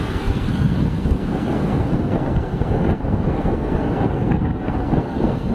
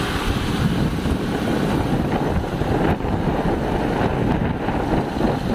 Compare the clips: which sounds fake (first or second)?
first